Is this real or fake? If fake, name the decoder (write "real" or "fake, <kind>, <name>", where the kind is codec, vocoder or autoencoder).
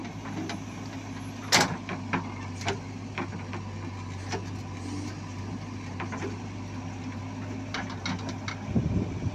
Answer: real